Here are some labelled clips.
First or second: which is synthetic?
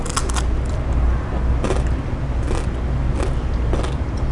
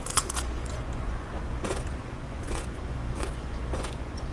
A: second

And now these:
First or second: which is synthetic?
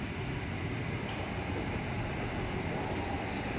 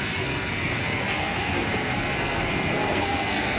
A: second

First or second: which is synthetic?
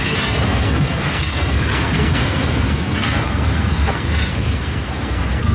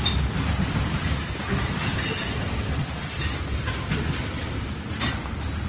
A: first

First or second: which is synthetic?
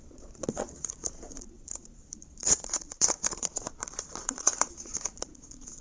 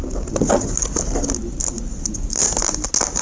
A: first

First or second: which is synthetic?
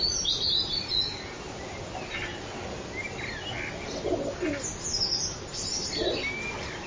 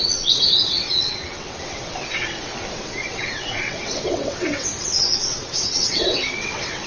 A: second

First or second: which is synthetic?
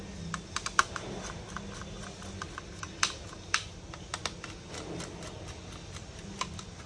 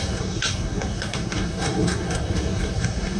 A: second